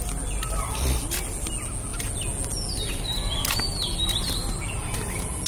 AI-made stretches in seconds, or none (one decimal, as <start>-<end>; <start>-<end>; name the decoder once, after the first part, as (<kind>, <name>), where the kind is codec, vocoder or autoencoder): none